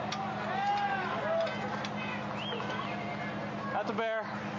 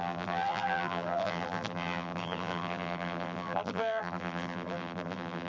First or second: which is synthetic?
second